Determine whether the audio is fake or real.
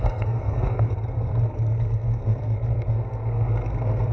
fake